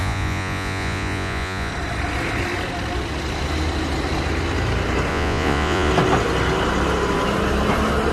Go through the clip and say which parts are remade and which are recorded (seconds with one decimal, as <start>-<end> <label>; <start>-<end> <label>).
0.0-1.7 remade; 1.7-5.1 recorded; 5.1-5.9 remade; 5.9-8.1 recorded